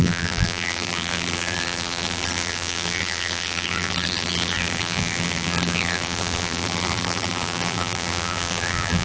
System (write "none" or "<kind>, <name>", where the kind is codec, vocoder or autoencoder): vocoder, BigVGAN v2